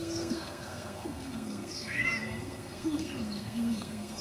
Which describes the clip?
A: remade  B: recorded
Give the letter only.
A